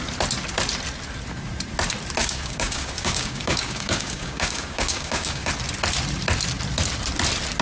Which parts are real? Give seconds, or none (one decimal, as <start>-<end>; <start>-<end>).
0.0-2.2; 5.5-7.6

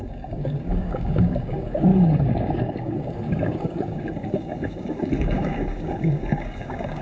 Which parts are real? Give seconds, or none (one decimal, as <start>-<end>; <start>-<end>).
none

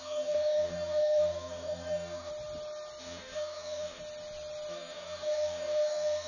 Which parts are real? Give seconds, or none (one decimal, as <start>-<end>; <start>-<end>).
2.3-3.0; 4.0-4.7

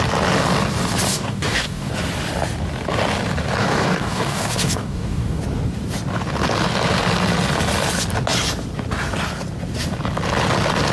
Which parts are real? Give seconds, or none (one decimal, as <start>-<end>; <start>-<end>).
0.0-1.1; 1.9-3.6; 5.4-10.9

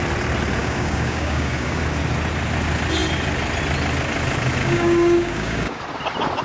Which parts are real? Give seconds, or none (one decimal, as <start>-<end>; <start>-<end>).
0.0-0.6; 1.8-4.6; 5.8-6.4

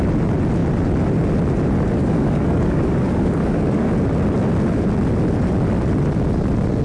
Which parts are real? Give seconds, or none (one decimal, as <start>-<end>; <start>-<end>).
0.0-2.0; 3.9-6.8

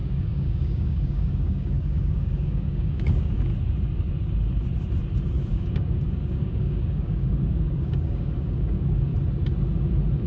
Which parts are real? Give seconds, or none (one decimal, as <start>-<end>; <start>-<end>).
3.5-5.5; 9.1-10.3

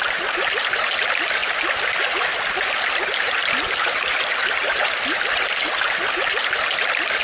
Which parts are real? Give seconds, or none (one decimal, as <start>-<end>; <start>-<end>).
0.0-7.2